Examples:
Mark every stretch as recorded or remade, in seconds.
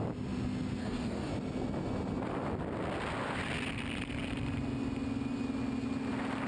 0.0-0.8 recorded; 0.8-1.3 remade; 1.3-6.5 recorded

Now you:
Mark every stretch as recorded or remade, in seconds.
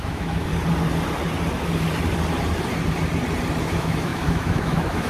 0.0-0.5 remade; 0.5-3.6 recorded; 3.6-5.1 remade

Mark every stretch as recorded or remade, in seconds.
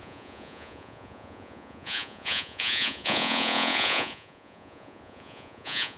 0.0-6.0 remade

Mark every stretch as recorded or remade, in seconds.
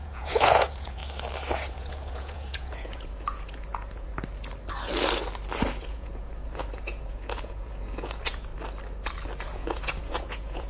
0.0-1.0 remade; 1.0-1.7 recorded; 1.7-4.1 remade; 4.1-5.9 recorded; 5.9-8.5 remade; 8.5-9.4 recorded; 9.4-10.7 remade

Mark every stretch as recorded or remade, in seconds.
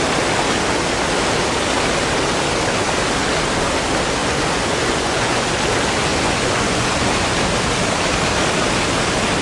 0.0-4.2 recorded; 4.2-5.5 remade; 5.5-6.1 recorded; 6.1-7.4 remade; 7.4-9.4 recorded